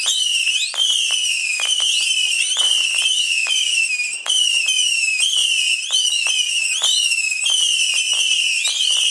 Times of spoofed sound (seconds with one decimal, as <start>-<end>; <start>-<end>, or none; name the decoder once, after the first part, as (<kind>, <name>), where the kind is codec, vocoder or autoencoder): 0.0-5.4 (vocoder, BigVGAN v2); 7.9-9.1